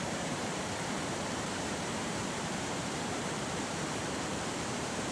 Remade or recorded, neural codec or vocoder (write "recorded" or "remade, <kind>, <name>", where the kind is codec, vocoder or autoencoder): remade, vocoder, BigVGAN v2